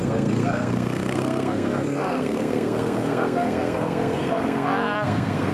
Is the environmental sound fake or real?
fake